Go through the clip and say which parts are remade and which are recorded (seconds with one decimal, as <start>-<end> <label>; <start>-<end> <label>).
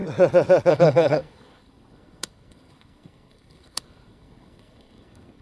0.0-0.7 recorded; 0.7-5.4 remade